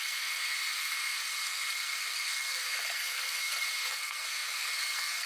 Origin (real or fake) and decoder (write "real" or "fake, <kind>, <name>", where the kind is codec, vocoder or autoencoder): fake, codec, SNAC